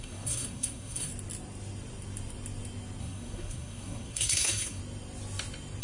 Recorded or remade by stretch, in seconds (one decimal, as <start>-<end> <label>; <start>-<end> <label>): 0.0-1.1 remade; 1.1-3.0 recorded; 3.0-4.8 remade; 4.8-5.8 recorded